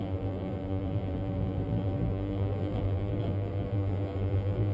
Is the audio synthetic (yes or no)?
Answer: yes